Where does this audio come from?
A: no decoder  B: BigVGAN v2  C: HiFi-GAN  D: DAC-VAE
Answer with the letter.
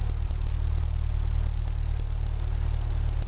A